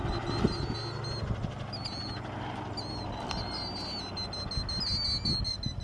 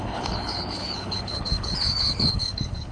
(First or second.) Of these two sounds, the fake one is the second